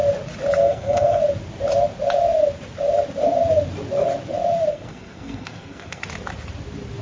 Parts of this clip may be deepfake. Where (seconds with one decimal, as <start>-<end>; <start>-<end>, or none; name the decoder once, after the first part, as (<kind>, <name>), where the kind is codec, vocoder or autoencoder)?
0.6-1.2 (codec, SNAC); 4.7-6.0